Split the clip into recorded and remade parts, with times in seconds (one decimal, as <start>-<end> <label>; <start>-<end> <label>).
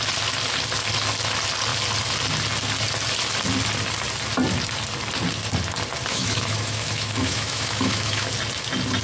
0.0-6.1 recorded; 6.1-8.3 remade; 8.3-9.0 recorded